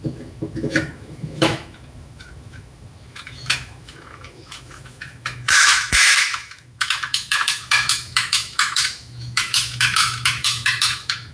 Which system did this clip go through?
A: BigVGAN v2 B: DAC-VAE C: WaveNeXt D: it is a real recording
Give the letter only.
B